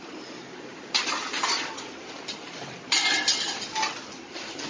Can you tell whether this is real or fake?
real